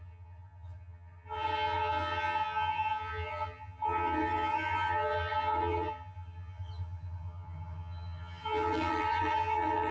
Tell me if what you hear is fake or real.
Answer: fake